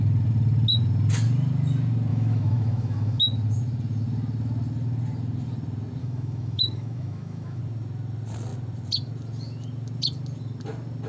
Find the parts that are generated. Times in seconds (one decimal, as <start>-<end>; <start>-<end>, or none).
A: 2.1-3.2; 6.0-7.6

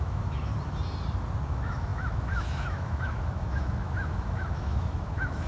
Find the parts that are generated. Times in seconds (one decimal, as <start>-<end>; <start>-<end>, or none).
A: 0.0-0.5; 1.4-5.5